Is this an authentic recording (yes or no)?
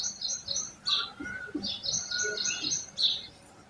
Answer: yes